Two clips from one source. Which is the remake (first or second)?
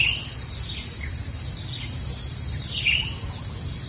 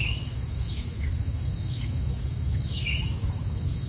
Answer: second